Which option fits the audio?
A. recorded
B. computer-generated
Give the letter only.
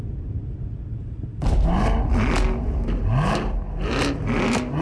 A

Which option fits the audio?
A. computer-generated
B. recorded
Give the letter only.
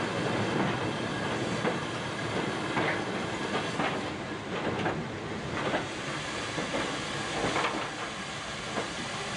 B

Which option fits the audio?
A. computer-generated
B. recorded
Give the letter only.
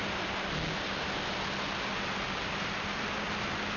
B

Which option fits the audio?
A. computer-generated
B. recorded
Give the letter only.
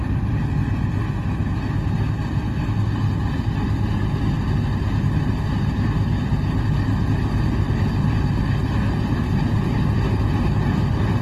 B